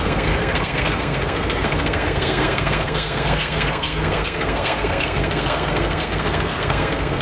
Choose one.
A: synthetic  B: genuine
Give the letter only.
A